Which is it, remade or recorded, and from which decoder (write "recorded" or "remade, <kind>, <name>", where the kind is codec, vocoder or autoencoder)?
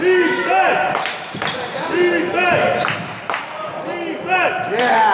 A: recorded